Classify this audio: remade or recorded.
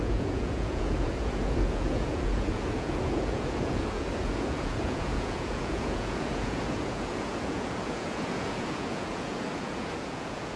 remade